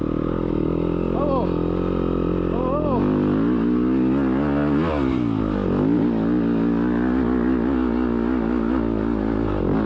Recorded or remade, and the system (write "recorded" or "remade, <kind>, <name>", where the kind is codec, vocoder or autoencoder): recorded